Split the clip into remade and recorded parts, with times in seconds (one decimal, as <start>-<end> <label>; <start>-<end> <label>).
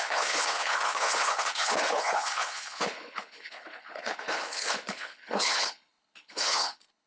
0.0-7.1 remade